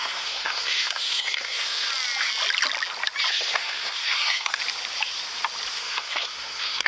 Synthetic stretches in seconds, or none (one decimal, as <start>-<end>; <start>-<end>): 0.0-1.9; 3.3-4.6; 5.7-6.9